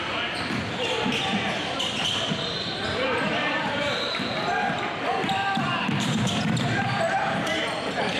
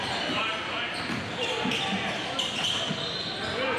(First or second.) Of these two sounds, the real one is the second